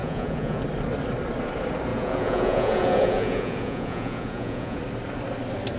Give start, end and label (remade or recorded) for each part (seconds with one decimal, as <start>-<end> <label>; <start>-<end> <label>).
0.0-0.6 remade; 0.6-1.9 recorded; 1.9-4.8 remade; 4.8-5.8 recorded

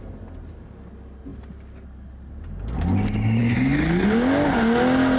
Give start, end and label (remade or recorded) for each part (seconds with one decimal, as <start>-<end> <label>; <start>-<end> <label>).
0.0-5.2 recorded

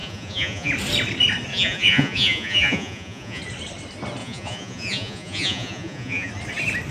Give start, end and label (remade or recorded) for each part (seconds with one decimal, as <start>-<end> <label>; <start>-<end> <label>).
0.0-0.7 remade; 0.7-1.5 recorded; 1.5-3.4 remade; 3.4-4.2 recorded; 4.2-6.3 remade; 6.3-6.9 recorded

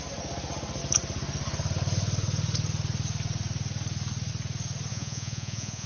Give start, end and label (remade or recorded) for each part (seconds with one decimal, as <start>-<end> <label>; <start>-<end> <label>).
0.0-4.9 recorded; 4.9-5.9 remade

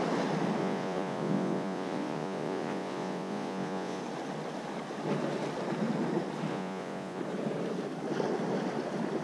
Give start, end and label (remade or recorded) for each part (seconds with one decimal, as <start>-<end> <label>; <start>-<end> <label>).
0.0-0.6 recorded; 0.6-4.0 remade; 4.0-6.5 recorded; 6.5-7.2 remade; 7.2-9.2 recorded

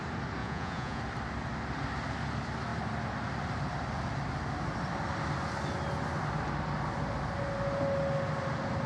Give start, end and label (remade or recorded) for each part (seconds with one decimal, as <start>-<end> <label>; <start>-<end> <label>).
0.0-0.4 recorded; 0.4-1.0 remade; 1.0-8.9 recorded

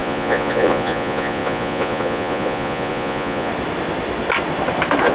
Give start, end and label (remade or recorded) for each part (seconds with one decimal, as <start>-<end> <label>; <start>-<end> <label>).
0.0-3.5 remade; 3.5-5.1 recorded

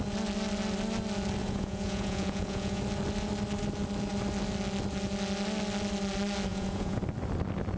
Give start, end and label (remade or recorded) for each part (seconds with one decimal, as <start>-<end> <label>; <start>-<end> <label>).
0.0-1.4 recorded; 1.4-2.8 remade; 2.8-6.5 recorded; 6.5-7.0 remade; 7.0-7.8 recorded